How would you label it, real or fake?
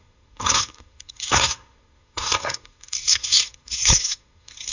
fake